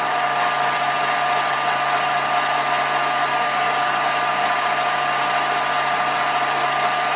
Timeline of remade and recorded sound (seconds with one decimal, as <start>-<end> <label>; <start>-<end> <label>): 0.0-3.3 recorded; 3.3-3.9 remade; 3.9-7.2 recorded